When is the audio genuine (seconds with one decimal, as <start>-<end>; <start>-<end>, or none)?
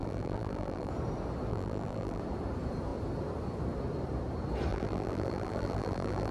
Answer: 0.9-1.5; 2.2-4.7